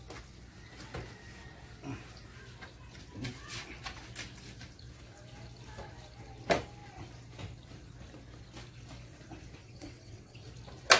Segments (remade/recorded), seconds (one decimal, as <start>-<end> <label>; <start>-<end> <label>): 0.0-9.6 recorded; 9.6-10.5 remade; 10.5-11.0 recorded